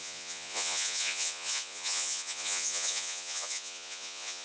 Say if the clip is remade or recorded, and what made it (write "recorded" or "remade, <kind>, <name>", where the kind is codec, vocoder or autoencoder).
remade, vocoder, Vocos